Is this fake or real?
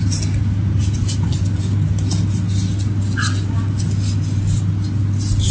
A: real